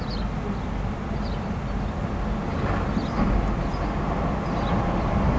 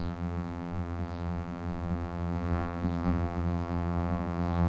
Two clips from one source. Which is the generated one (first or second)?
second